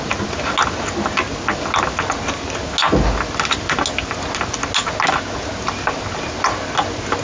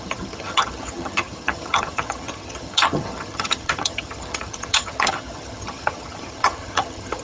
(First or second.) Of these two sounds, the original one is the first